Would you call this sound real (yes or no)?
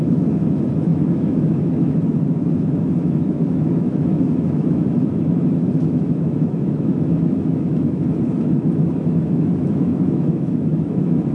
no